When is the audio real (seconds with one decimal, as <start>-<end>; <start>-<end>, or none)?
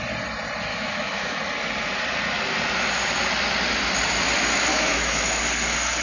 0.0-0.7; 1.4-4.7; 5.4-6.0